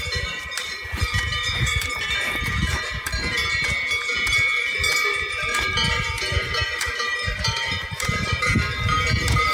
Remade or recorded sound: remade